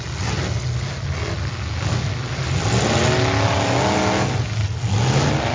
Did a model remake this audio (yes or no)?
no